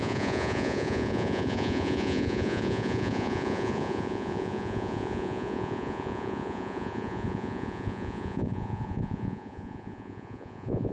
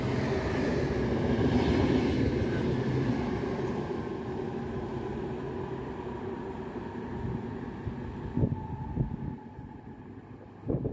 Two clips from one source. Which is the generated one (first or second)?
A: first